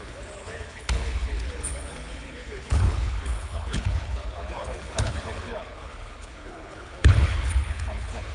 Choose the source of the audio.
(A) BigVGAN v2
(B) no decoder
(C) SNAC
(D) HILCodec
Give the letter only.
D